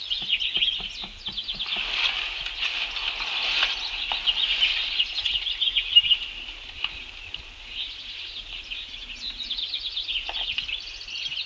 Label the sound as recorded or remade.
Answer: recorded